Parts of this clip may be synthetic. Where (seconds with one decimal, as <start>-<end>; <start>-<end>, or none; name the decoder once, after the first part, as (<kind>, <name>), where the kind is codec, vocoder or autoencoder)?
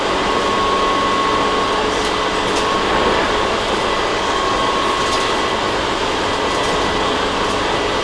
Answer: 4.1-4.7 (codec, DAC)